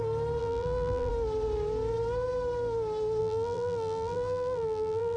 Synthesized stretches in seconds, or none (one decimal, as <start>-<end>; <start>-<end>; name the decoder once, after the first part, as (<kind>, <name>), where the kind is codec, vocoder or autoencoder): 0.4-1.1 (vocoder, BigVGAN v2); 3.2-5.2